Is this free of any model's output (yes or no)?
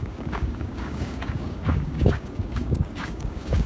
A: no